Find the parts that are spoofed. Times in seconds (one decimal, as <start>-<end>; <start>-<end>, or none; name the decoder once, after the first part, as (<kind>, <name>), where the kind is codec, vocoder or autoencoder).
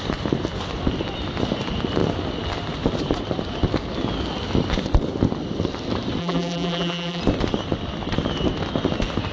6.2-7.2 (vocoder, BigVGAN v2)